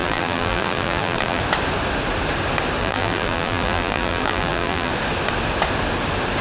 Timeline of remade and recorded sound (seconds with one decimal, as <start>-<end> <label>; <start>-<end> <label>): 0.0-1.4 remade; 1.4-2.8 recorded; 2.8-4.9 remade; 4.9-6.4 recorded